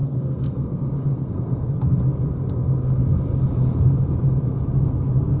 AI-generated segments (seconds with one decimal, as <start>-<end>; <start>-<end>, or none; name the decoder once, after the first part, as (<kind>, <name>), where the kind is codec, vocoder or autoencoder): 0.0-1.8 (codec, SNAC)